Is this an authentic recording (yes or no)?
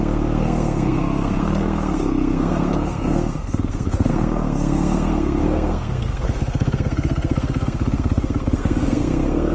no